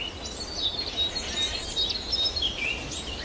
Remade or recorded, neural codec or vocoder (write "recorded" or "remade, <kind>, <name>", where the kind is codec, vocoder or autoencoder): recorded